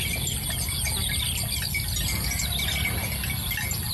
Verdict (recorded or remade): recorded